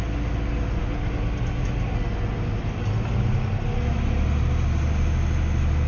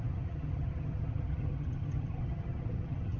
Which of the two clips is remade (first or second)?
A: second